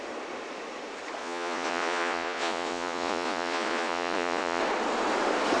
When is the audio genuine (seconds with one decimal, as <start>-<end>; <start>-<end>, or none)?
0.0-1.2; 4.6-5.6